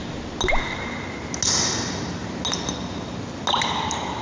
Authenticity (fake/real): real